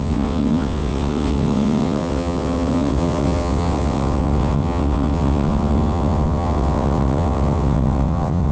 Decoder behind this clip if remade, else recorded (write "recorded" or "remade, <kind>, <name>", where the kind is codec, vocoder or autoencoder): remade, vocoder, WaveNeXt